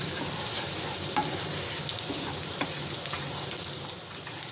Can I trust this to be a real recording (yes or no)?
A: yes